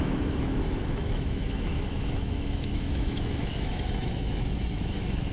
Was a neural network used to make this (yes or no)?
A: yes